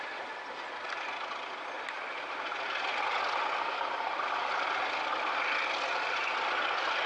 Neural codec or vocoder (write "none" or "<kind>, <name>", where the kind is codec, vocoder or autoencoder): none